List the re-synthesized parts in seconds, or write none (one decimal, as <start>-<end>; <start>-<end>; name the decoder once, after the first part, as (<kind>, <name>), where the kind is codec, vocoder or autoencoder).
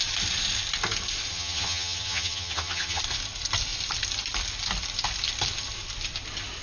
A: 1.3-3.0 (vocoder, HiFi-GAN)